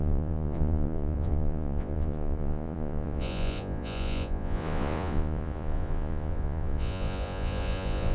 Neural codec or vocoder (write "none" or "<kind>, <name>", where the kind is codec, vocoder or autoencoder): vocoder, Vocos